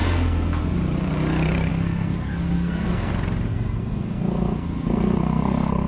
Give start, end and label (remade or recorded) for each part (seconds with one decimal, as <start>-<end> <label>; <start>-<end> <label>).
0.0-0.6 remade; 0.6-1.7 recorded; 1.7-3.1 remade; 3.1-3.5 recorded; 3.5-5.9 remade